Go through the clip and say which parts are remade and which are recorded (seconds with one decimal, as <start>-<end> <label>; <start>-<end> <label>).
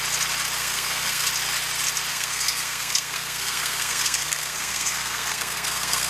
0.0-0.6 recorded; 0.6-1.3 remade; 1.3-2.1 recorded; 2.1-6.1 remade